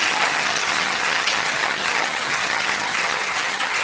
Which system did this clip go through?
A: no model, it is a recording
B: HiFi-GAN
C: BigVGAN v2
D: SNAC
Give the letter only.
B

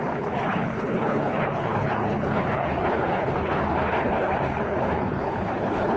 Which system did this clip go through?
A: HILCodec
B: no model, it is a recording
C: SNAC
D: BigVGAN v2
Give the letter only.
A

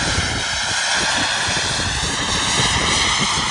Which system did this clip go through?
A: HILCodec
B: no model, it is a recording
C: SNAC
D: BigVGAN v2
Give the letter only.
B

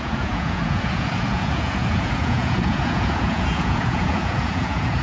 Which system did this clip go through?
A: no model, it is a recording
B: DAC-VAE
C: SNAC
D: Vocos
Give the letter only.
D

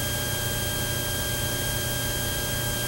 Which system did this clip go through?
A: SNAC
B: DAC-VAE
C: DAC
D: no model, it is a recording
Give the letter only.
D